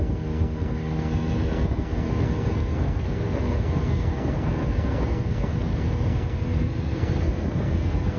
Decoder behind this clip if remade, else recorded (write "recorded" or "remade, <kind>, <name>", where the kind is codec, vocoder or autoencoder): remade, codec, SNAC